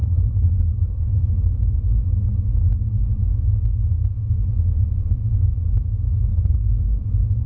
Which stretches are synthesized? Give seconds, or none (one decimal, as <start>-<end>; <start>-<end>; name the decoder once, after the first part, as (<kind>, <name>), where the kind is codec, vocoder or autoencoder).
0.0-1.2 (codec, HILCodec); 6.3-6.8